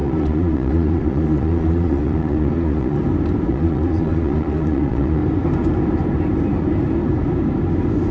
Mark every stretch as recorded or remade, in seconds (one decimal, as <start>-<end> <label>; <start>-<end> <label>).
0.0-3.0 remade; 3.0-3.5 recorded; 3.5-5.2 remade; 5.2-8.1 recorded